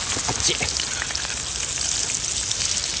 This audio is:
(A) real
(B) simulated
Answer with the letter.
A